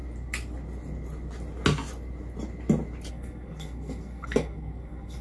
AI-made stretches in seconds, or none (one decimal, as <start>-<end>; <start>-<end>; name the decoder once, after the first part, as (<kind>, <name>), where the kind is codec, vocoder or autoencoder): 3.1-5.2 (codec, SNAC)